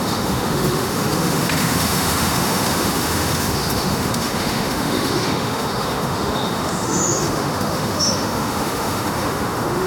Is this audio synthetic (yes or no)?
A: yes